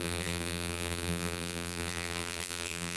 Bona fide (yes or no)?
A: no